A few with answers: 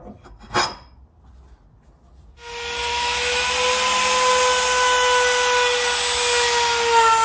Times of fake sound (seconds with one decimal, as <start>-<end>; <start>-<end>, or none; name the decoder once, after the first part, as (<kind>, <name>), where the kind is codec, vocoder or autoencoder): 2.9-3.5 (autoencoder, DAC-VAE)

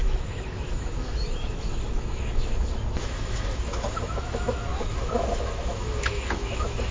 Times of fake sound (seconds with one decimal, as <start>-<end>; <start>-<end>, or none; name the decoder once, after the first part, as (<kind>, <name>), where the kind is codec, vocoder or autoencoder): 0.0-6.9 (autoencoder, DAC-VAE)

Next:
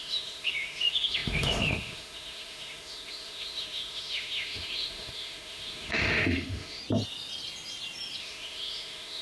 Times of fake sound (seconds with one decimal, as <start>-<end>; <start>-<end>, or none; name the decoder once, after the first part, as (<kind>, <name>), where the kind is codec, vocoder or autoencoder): 0.0-6.8 (autoencoder, DAC-VAE); 8.2-9.2

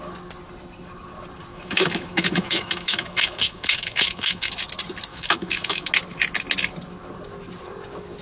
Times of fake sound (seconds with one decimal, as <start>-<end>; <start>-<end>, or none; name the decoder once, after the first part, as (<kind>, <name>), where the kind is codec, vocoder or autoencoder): 1.5-4.5 (autoencoder, DAC-VAE); 5.1-5.9

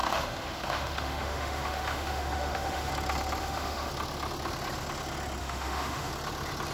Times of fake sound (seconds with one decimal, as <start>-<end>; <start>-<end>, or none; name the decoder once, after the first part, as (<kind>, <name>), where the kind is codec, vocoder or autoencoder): 0.0-2.9 (autoencoder, DAC-VAE); 3.4-3.9; 5.4-6.1

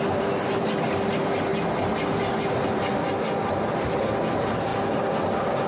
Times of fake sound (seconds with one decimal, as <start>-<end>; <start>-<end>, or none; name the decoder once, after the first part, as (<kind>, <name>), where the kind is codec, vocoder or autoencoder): none

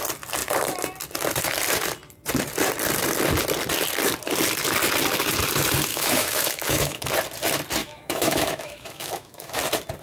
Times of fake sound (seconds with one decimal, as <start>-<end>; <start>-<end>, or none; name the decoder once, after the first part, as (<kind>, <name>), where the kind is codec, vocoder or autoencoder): 5.9-7.1 (autoencoder, DAC-VAE); 7.8-9.6